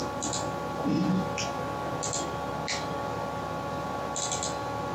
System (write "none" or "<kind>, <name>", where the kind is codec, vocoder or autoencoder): none